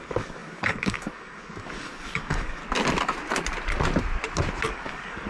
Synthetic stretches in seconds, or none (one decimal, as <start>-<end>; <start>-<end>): 0.0-2.6; 4.7-5.3